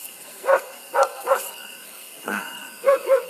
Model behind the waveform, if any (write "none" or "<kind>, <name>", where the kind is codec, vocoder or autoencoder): codec, SNAC